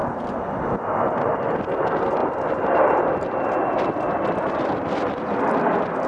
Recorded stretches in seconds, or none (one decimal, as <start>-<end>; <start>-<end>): 1.6-2.2